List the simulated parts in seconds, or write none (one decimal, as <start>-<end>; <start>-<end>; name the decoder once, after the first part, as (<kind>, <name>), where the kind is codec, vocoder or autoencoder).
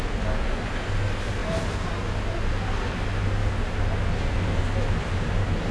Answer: none